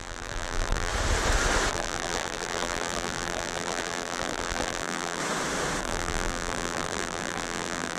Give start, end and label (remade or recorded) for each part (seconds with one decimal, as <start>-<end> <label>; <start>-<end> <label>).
0.0-0.9 remade; 0.9-1.7 recorded; 1.7-5.2 remade; 5.2-5.8 recorded; 5.8-8.0 remade